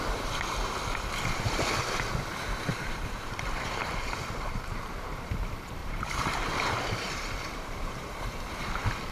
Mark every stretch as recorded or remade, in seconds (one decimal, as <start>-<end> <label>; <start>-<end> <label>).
0.0-2.7 recorded; 2.7-5.3 remade; 5.3-5.8 recorded; 5.8-8.1 remade; 8.1-9.1 recorded